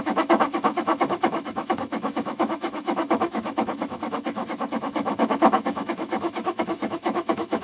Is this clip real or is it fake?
fake